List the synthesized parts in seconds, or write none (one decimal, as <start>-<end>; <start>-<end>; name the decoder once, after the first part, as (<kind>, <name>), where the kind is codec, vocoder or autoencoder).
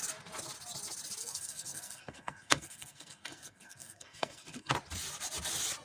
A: 1.2-4.7 (codec, SNAC)